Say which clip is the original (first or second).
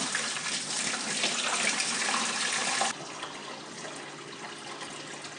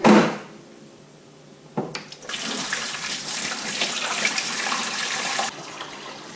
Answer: first